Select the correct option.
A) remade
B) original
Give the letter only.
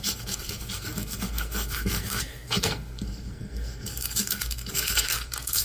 A